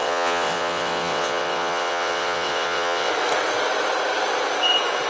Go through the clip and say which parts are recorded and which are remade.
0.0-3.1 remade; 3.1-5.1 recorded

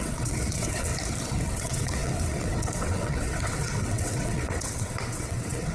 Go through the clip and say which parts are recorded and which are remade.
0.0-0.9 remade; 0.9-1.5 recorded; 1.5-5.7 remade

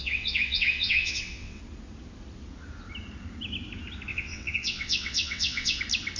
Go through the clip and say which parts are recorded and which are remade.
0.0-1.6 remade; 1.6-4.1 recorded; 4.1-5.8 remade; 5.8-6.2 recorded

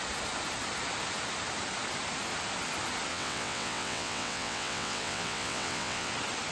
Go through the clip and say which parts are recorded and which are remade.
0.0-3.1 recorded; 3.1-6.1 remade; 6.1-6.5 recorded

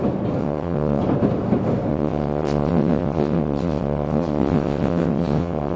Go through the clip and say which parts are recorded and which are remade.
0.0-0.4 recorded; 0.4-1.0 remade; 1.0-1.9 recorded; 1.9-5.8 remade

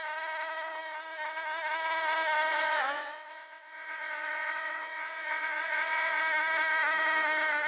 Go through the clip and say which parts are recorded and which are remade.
0.0-2.5 recorded; 2.5-6.2 remade; 6.2-7.7 recorded

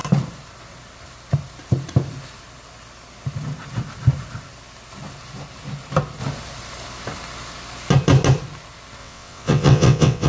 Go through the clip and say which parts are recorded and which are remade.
0.0-9.0 recorded; 9.0-10.3 remade

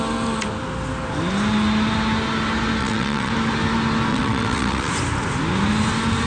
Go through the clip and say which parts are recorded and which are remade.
0.0-2.8 recorded; 2.8-3.3 remade; 3.3-4.1 recorded; 4.1-4.9 remade; 4.9-6.3 recorded